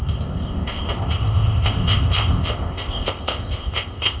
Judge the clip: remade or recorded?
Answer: remade